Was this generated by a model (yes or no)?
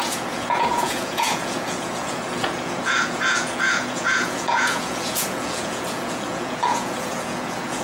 yes